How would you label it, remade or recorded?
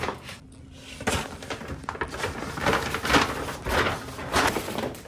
recorded